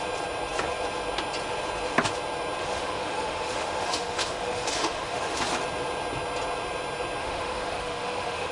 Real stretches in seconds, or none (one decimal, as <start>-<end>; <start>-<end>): 0.0-2.6; 5.4-7.2

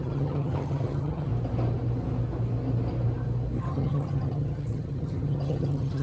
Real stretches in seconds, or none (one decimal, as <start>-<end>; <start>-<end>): 1.3-3.6

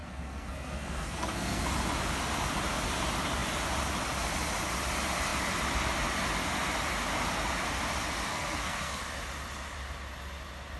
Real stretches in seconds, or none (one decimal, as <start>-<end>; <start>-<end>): 1.6-8.3; 9.0-10.8